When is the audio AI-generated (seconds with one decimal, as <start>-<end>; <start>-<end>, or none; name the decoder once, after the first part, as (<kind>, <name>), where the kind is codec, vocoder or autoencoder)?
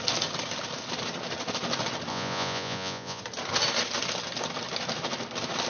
2.1-3.2 (vocoder, Vocos)